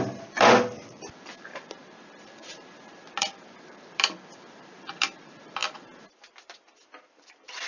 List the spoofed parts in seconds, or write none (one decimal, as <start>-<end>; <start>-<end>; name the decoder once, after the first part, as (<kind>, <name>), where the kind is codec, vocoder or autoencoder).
0.0-5.6 (vocoder, BigVGAN v2); 6.3-7.7